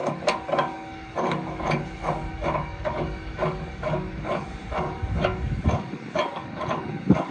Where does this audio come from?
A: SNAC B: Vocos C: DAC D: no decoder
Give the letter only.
C